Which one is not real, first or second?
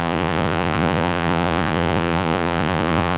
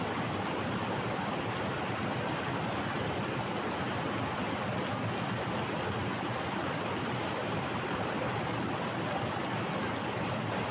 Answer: first